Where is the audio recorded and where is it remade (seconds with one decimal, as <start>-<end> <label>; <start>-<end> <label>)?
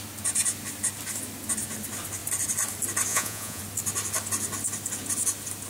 0.0-3.1 recorded; 3.1-3.6 remade; 3.6-5.7 recorded